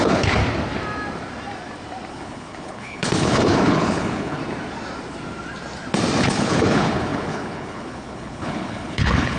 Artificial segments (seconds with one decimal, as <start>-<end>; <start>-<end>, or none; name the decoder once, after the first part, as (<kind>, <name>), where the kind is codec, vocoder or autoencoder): 0.0-0.4 (codec, HILCodec); 2.1-4.4; 6.2-9.4